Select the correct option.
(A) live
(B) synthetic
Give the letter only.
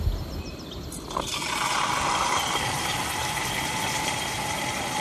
A